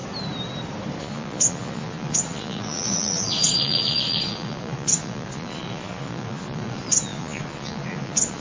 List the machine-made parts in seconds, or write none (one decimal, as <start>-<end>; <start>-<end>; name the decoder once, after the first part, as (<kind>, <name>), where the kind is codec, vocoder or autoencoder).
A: 1.0-8.4 (vocoder, Vocos)